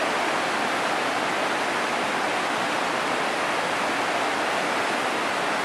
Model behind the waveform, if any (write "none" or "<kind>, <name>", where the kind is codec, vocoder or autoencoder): none